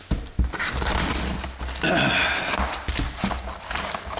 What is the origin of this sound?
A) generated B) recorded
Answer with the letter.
B